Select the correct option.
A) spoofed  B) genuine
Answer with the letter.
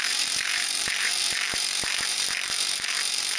A